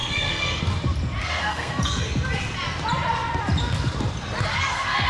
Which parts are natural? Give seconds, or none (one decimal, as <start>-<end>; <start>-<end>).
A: 0.6-1.2; 2.1-4.5